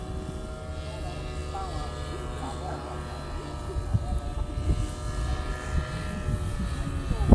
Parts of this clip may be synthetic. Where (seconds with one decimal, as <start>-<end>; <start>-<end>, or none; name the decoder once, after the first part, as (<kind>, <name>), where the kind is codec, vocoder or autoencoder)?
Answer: none